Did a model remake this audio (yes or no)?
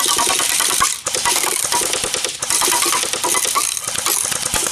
no